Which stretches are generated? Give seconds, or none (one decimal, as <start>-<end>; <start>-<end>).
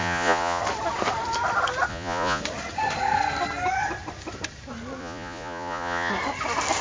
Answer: 0.0-0.6; 1.9-2.4; 5.0-6.1